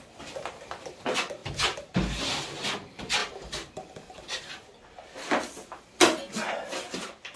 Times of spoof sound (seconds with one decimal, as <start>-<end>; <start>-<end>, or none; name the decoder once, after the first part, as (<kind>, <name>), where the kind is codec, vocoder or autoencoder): none